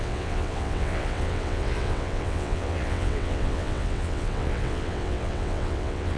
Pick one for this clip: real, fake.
fake